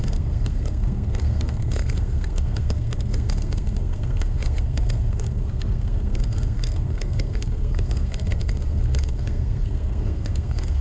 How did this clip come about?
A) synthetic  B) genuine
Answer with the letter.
A